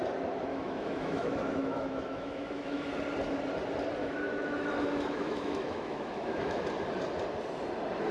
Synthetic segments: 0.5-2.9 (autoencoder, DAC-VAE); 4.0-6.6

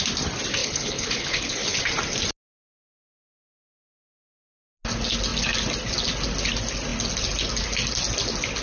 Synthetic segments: 0.6-1.8 (codec, HILCodec)

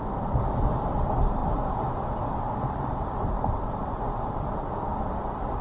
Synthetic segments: 0.0-5.6 (vocoder, BigVGAN v2)

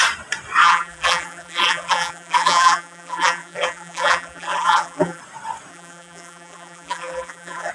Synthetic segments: 0.6-5.2 (vocoder, BigVGAN v2); 5.7-7.7

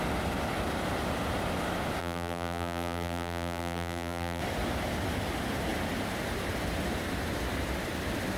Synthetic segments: 2.0-4.4 (vocoder, BigVGAN v2)

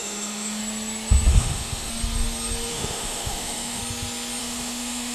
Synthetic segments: 0.0-0.6 (autoencoder, DAC-VAE); 1.3-1.9; 2.7-3.8; 4.4-5.1